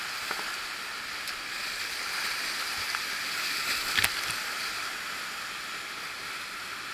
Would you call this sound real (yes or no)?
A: no